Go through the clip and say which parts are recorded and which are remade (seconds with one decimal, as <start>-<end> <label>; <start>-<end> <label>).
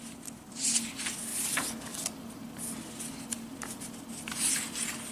0.0-5.1 recorded